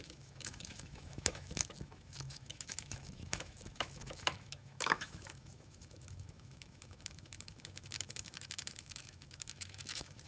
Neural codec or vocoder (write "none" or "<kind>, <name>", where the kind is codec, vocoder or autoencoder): autoencoder, DAC-VAE